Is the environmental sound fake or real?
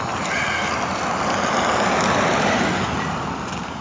real